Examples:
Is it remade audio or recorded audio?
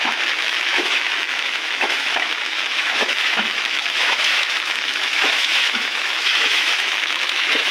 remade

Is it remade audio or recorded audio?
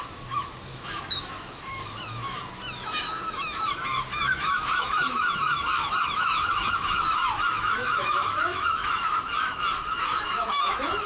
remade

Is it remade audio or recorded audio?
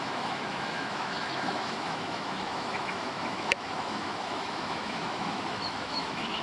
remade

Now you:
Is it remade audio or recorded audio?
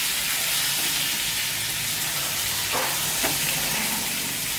recorded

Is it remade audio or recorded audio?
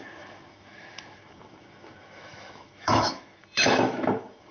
remade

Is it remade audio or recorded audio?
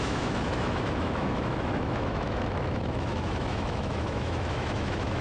remade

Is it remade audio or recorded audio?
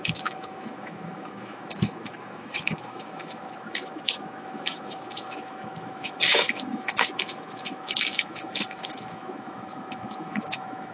remade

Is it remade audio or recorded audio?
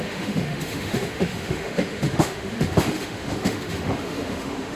remade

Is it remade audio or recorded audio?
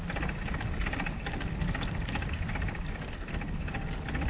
recorded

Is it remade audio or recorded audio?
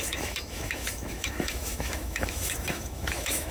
remade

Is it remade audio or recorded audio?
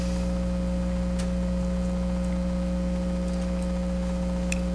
recorded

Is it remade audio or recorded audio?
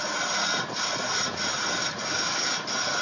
recorded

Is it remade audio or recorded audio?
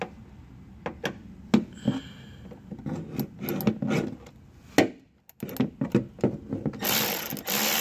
recorded